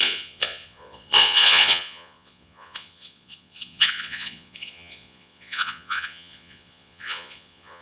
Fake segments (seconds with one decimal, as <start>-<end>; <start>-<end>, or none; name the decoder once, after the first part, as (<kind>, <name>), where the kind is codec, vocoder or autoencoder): 0.0-7.8 (vocoder, Vocos)